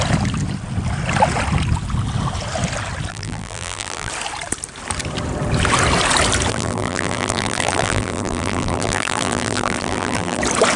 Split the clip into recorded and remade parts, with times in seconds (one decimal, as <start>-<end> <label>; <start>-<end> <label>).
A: 0.0-3.1 recorded; 3.1-4.1 remade; 4.1-6.5 recorded; 6.5-10.4 remade; 10.4-10.8 recorded